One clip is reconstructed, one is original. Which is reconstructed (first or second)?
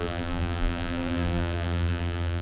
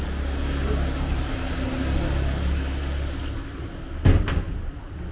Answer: first